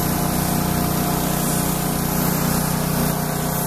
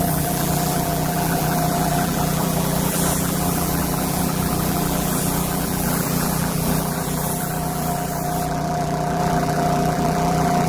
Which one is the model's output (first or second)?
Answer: second